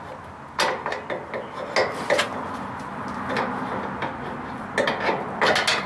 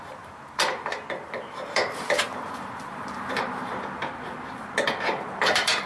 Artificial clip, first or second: second